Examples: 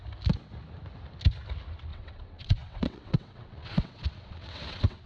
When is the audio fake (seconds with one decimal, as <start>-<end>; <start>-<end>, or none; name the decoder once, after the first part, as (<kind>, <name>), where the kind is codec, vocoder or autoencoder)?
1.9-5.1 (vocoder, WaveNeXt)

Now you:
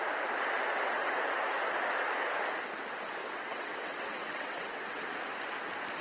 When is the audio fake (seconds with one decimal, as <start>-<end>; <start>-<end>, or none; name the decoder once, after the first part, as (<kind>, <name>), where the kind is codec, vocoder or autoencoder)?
3.2-5.0 (vocoder, WaveNeXt)

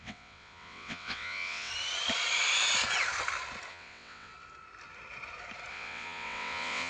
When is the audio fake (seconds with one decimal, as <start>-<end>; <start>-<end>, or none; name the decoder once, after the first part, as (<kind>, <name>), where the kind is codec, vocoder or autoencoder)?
0.0-1.7 (vocoder, WaveNeXt); 3.7-4.3; 5.7-6.9

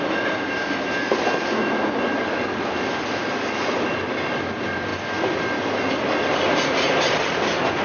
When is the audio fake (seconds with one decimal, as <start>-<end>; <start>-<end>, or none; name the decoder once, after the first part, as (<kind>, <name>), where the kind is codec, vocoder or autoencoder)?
none

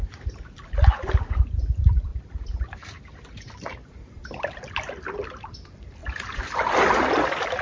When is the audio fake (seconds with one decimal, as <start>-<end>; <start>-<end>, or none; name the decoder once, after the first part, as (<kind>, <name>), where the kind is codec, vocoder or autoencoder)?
none

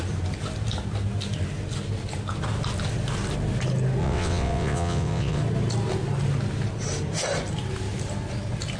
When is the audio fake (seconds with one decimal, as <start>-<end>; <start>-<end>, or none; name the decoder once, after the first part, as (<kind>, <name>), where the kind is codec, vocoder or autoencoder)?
4.0-5.4 (vocoder, WaveNeXt)